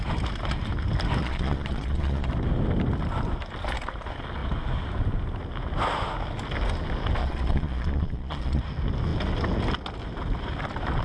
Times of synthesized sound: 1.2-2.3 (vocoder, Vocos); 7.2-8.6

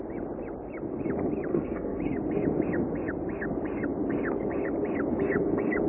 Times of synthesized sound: 1.5-2.0 (codec, SNAC)